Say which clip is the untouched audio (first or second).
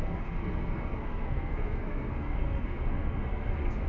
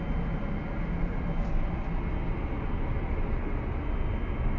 second